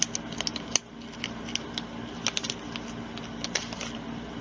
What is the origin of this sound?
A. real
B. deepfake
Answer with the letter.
A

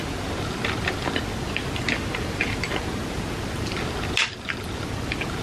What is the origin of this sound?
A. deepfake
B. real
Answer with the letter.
B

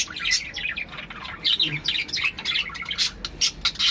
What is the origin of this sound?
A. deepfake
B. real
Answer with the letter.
B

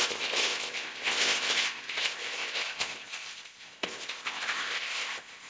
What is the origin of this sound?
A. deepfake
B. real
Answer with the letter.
A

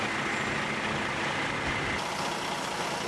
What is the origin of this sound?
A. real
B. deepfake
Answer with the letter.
A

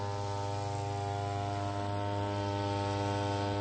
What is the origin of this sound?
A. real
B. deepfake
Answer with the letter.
A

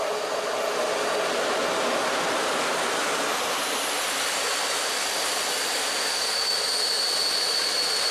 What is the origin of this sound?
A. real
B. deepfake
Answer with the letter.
A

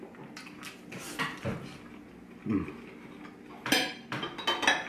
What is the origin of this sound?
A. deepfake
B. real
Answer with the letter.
B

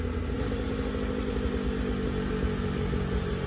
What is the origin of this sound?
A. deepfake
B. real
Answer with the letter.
B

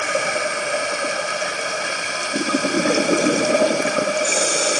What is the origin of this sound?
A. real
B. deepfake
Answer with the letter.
A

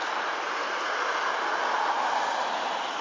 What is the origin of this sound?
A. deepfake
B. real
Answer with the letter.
B